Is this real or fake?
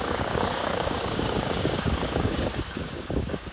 fake